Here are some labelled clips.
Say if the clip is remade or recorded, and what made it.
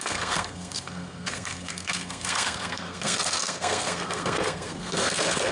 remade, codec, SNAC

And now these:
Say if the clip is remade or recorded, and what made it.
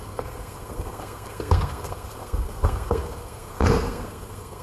remade, codec, SNAC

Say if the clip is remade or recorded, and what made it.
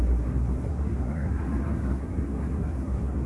remade, codec, SNAC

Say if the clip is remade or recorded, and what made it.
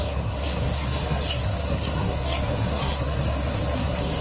remade, codec, SNAC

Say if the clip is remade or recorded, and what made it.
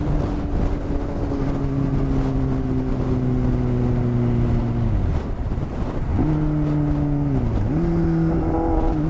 recorded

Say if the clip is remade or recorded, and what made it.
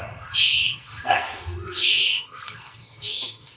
remade, codec, SNAC